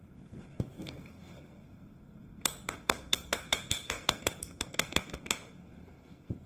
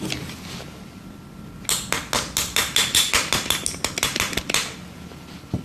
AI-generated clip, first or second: first